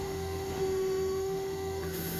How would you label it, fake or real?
fake